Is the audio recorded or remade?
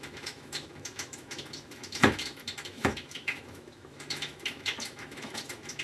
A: remade